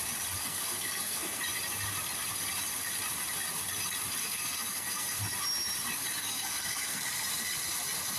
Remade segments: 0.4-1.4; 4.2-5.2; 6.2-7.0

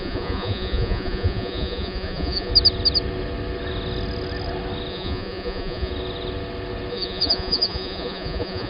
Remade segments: 0.0-2.5; 4.9-5.9; 6.9-8.7

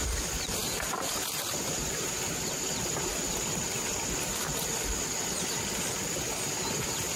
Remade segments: none

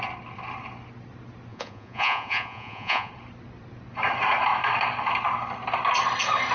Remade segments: 1.5-3.1

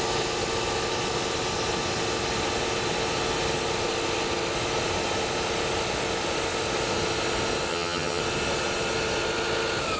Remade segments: 7.7-8.2

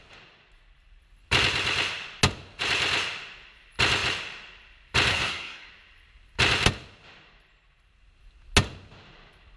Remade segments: 5.1-5.7